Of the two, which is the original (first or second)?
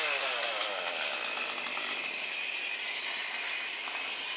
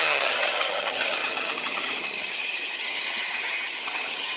first